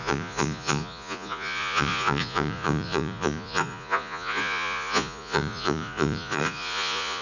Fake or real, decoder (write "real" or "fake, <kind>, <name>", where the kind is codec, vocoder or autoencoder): fake, vocoder, Vocos